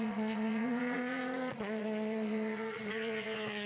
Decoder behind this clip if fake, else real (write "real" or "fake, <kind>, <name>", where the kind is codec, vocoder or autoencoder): fake, vocoder, Vocos